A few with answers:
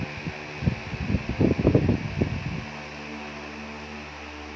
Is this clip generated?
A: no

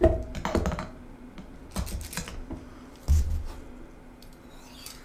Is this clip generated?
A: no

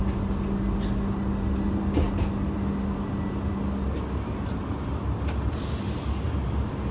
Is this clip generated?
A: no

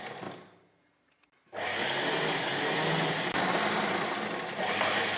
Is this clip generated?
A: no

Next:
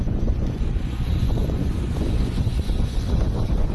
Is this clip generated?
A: yes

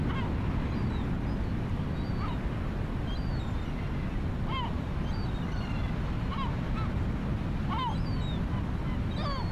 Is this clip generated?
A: no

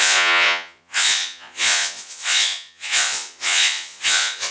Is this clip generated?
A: yes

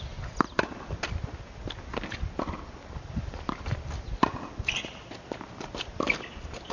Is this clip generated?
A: no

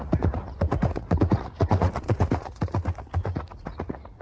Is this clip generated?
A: yes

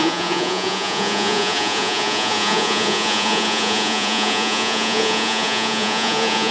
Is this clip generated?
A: yes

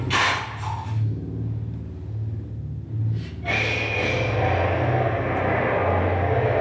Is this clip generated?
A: no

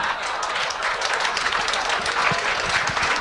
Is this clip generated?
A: yes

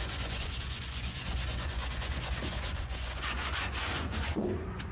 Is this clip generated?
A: yes